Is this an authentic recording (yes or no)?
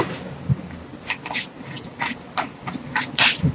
yes